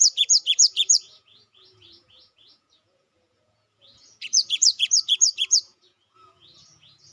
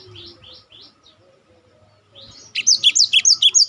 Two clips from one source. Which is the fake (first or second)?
first